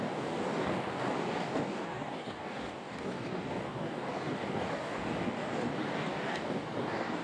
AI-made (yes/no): yes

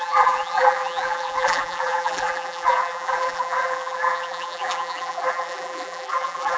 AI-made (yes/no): yes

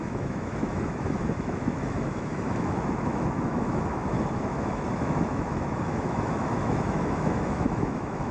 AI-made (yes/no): yes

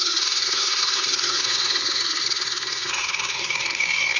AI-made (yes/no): yes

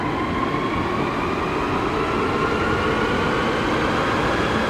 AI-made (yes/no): no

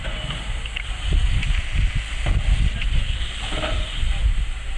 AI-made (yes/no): no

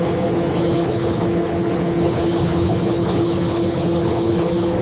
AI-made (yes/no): yes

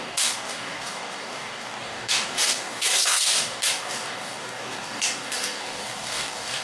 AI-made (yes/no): yes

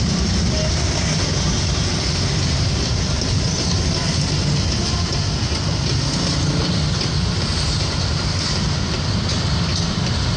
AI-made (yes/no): no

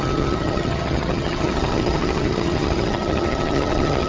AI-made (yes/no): yes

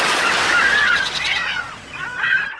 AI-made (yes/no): yes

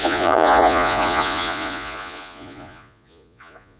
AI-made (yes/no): yes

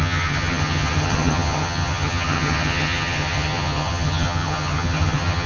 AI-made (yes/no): yes